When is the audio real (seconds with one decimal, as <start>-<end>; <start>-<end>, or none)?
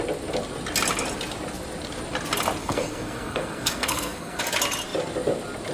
0.0-2.6; 4.4-5.7